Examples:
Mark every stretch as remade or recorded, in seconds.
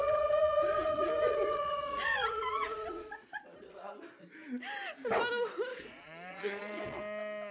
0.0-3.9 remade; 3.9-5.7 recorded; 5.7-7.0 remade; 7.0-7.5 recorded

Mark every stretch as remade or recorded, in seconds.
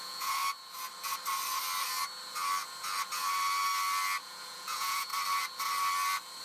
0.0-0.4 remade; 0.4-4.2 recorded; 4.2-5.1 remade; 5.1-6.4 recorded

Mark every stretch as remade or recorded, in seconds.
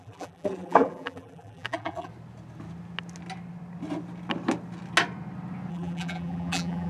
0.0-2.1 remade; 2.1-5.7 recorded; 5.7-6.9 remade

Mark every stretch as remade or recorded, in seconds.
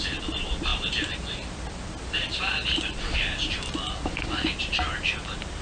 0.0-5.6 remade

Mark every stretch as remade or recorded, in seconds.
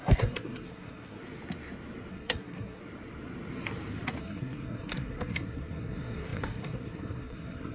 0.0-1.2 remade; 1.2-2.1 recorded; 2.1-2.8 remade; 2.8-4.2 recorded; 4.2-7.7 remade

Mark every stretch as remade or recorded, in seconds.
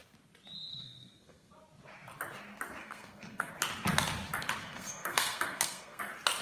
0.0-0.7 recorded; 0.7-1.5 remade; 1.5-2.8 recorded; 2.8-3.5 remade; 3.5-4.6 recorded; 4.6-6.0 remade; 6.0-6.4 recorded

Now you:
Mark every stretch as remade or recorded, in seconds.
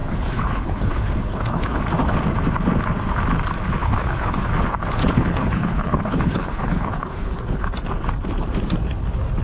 0.0-1.8 remade; 1.8-3.8 recorded; 3.8-4.5 remade; 4.5-5.0 recorded; 5.0-7.7 remade; 7.7-9.4 recorded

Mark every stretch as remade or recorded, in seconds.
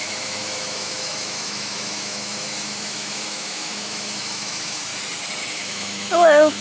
0.0-4.9 remade; 4.9-5.5 recorded; 5.5-6.6 remade